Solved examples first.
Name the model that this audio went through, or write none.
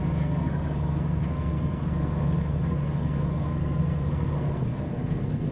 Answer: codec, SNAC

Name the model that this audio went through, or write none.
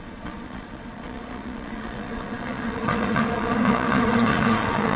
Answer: vocoder, Vocos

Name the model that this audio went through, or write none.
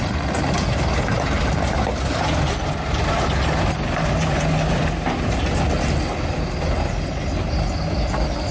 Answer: none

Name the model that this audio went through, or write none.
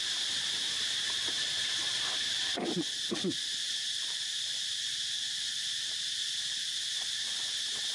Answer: vocoder, BigVGAN v2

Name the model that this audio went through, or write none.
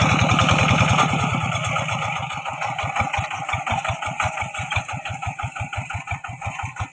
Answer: none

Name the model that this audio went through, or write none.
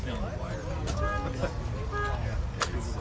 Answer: none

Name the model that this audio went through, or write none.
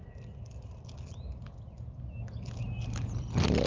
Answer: none